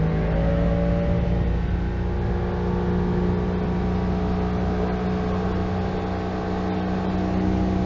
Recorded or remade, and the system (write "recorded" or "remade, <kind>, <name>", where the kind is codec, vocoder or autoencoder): recorded